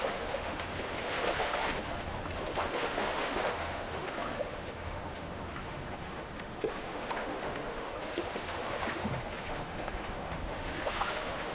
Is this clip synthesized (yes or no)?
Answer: yes